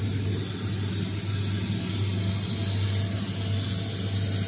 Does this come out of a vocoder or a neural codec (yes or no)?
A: no